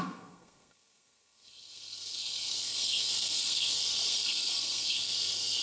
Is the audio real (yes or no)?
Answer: no